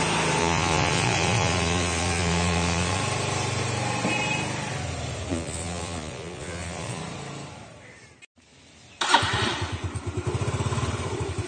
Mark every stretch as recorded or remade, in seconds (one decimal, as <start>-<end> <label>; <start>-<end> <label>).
0.0-0.4 recorded; 0.4-3.0 remade; 3.0-5.3 recorded; 5.3-7.0 remade; 7.0-11.5 recorded